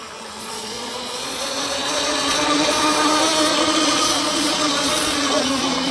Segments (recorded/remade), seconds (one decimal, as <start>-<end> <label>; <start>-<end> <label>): 0.0-0.4 recorded; 0.4-2.8 remade; 2.8-3.5 recorded; 3.5-5.9 remade